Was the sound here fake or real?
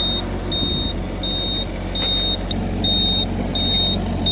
real